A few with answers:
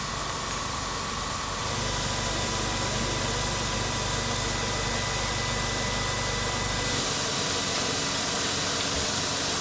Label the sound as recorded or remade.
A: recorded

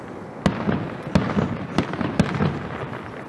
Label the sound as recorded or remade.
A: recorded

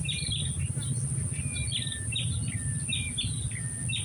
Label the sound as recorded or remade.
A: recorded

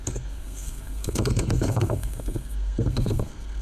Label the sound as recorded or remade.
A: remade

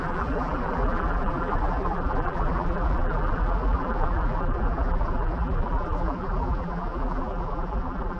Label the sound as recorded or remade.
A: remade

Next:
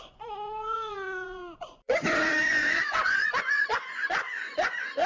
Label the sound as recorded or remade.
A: remade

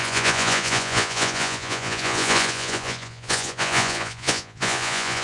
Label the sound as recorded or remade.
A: remade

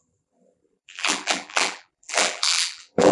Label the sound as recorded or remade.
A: remade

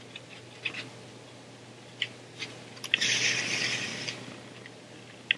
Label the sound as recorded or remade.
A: recorded